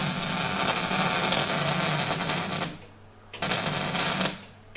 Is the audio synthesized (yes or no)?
no